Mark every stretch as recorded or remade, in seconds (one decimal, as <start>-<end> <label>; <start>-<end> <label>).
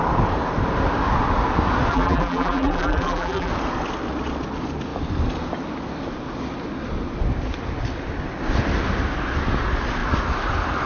0.0-1.9 recorded; 1.9-3.5 remade; 3.5-10.9 recorded